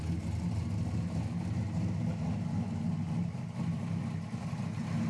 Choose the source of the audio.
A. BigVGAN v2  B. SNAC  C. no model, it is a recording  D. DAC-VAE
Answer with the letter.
C